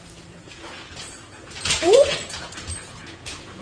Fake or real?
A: fake